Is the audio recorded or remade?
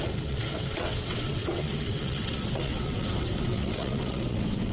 remade